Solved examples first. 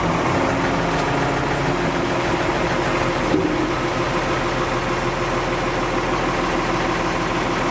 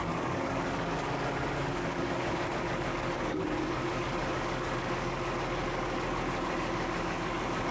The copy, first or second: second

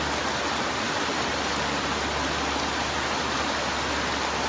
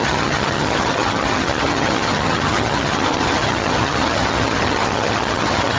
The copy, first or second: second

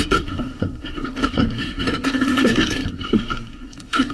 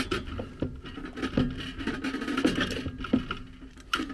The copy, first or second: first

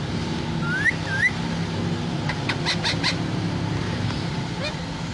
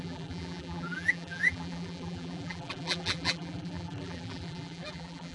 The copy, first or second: second